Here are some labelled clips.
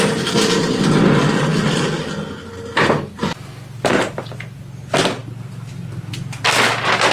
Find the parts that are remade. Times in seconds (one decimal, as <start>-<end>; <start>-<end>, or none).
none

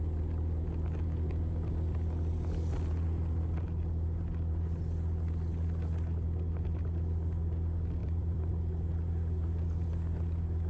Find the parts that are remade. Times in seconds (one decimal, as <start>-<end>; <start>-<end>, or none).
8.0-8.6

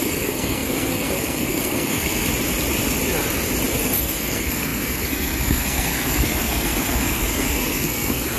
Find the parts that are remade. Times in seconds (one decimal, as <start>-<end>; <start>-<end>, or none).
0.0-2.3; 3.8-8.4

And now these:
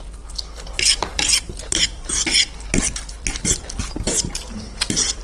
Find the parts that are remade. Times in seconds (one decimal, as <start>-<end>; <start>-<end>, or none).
1.1-2.1; 3.8-4.8

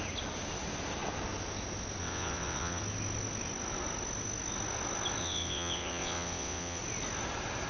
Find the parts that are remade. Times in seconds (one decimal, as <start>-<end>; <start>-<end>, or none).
2.0-2.8; 5.2-6.8

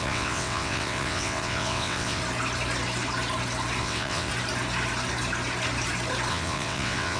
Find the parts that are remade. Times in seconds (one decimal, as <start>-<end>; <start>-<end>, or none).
0.0-2.2; 3.8-4.3; 6.3-7.2